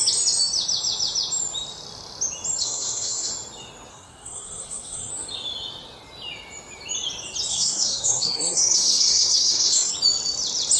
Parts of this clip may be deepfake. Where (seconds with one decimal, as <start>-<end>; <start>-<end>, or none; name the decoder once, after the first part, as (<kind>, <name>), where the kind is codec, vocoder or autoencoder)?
2.6-3.3 (codec, SNAC); 3.9-5.1; 7.5-9.9